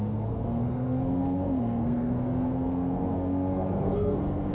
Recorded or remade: remade